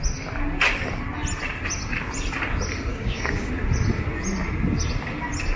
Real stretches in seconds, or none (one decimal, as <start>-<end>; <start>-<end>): 0.0-2.9; 3.5-5.6